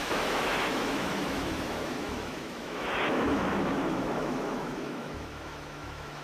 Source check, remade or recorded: remade